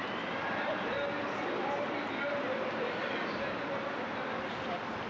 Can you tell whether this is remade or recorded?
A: recorded